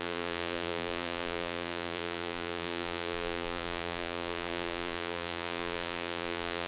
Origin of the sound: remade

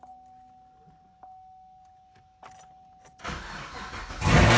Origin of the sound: recorded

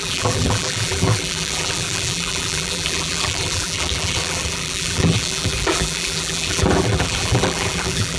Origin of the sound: remade